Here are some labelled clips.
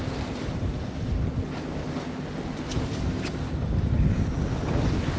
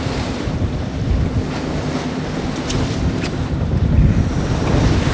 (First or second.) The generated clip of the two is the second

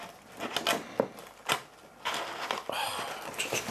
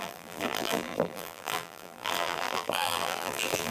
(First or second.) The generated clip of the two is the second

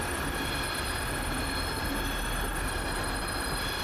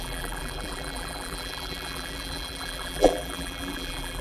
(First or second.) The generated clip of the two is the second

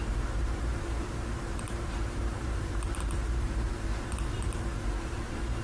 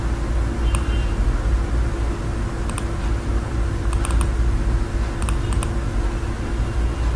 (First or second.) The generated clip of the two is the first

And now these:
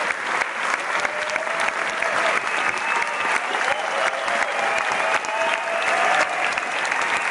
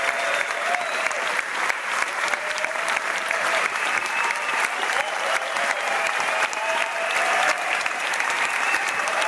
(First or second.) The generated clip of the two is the second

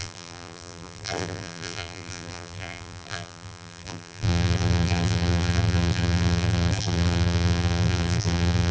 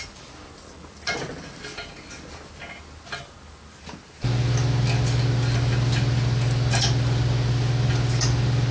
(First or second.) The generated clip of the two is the first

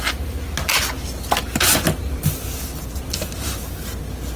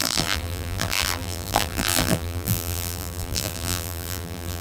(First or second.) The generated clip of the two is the second